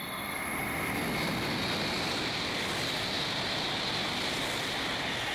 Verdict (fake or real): real